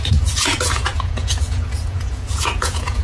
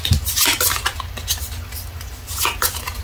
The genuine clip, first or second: second